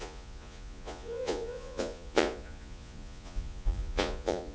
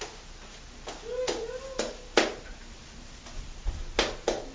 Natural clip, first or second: second